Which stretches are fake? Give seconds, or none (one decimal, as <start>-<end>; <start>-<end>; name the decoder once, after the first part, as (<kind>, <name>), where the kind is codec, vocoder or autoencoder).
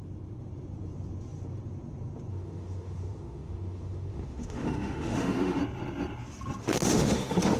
2.3-5.6 (autoencoder, DAC-VAE); 6.6-7.6